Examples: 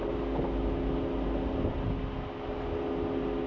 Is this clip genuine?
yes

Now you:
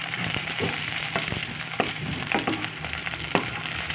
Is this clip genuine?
no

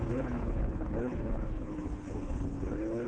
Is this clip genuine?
no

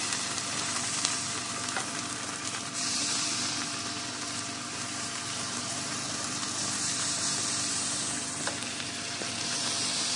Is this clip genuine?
no